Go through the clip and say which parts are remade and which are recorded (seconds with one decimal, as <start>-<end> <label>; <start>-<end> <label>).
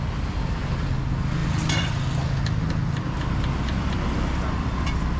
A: 0.0-1.4 recorded; 1.4-2.0 remade; 2.0-5.2 recorded